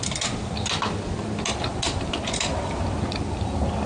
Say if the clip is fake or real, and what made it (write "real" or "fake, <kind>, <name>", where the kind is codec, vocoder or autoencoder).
real